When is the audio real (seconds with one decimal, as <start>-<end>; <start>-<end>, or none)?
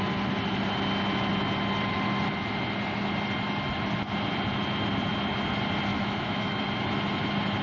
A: 0.0-5.9; 6.6-7.6